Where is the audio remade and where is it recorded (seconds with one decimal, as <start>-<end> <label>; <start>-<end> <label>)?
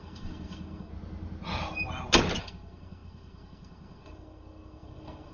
0.0-0.9 remade; 0.9-2.4 recorded; 2.4-5.3 remade